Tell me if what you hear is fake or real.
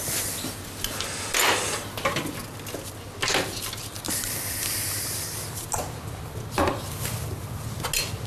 real